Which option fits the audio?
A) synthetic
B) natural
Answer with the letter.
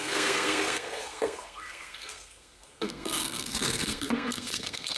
A